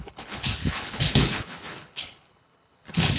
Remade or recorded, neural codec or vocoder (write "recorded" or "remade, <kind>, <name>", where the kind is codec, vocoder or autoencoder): remade, codec, HILCodec